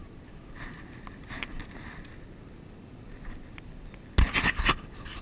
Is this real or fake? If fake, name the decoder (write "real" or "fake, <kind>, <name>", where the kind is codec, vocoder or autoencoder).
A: real